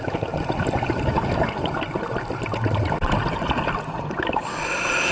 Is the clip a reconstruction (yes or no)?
no